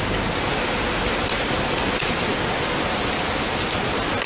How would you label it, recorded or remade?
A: recorded